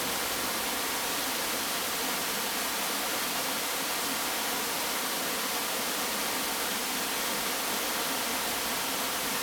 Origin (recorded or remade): recorded